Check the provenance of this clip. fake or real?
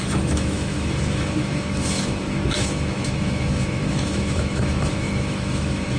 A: fake